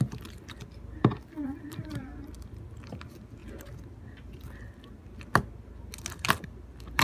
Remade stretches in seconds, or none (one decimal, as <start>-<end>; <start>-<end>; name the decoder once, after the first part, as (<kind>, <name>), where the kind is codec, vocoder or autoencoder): 1.1-2.0 (vocoder, BigVGAN v2)